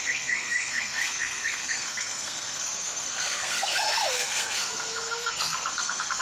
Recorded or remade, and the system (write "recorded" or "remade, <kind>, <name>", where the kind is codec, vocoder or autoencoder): remade, codec, SNAC